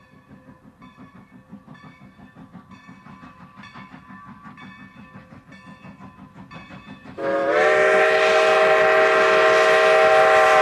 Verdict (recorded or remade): recorded